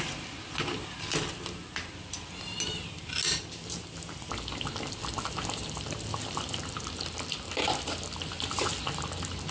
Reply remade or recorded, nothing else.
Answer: recorded